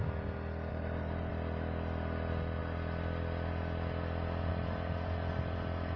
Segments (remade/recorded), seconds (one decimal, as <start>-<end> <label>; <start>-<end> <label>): 0.0-0.7 recorded; 0.7-1.3 remade; 1.3-6.0 recorded